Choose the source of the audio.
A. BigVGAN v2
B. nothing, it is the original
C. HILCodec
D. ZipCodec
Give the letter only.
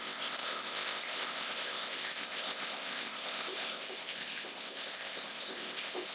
D